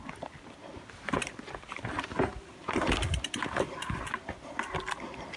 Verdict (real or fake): real